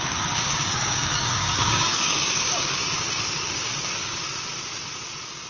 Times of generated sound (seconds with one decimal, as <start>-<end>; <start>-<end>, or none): 0.0-4.3